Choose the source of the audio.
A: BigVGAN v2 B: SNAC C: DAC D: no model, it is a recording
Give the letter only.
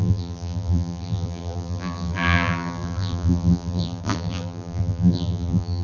A